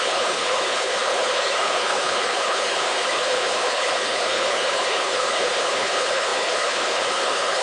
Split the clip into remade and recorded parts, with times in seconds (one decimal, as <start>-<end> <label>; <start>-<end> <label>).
0.0-7.6 remade